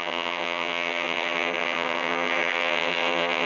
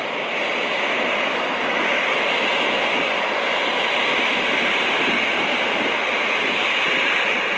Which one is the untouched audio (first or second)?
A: second